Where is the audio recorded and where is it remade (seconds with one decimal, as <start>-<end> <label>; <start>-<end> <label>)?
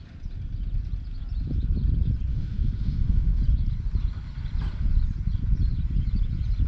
0.0-2.3 recorded; 2.3-3.4 remade; 3.4-6.7 recorded